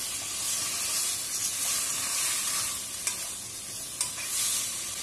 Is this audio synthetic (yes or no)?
no